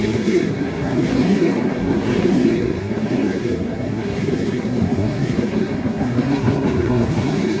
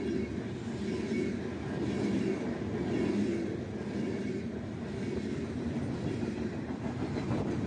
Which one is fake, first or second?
first